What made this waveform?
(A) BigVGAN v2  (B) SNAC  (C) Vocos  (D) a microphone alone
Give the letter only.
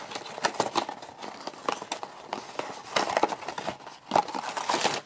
D